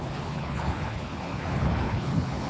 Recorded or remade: remade